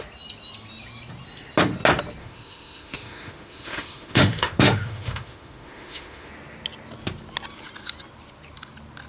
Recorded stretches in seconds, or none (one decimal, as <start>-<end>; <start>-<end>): 0.0-2.2; 6.3-9.1